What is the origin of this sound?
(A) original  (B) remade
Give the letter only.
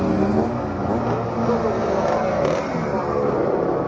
A